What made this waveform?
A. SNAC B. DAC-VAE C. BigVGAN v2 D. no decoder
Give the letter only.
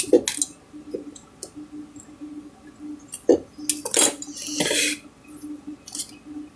D